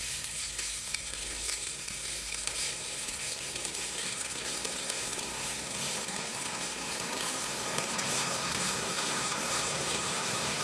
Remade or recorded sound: remade